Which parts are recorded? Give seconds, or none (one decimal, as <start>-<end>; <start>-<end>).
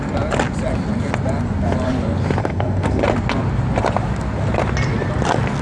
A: 0.0-2.4; 3.0-5.6